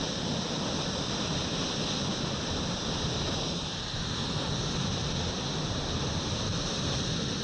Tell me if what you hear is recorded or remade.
recorded